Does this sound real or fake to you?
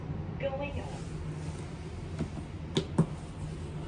real